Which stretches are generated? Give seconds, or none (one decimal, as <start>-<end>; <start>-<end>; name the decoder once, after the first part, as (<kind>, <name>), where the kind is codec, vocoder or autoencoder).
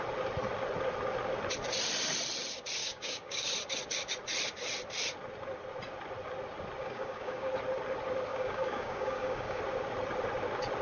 2.8-3.5 (codec, DAC); 6.8-7.5; 8.3-9.6